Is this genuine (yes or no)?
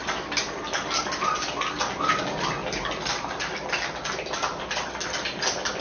yes